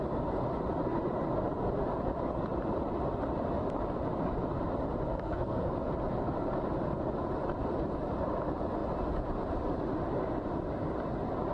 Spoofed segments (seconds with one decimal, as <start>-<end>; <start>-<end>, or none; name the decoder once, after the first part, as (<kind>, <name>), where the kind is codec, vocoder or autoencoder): 5.1-5.7 (codec, SNAC)